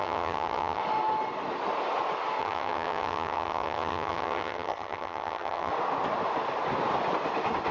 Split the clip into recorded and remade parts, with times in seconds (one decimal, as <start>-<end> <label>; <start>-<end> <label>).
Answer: 0.0-0.8 remade; 0.8-2.4 recorded; 2.4-5.7 remade; 5.7-7.7 recorded